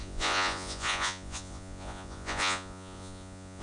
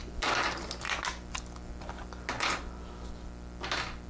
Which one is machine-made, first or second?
first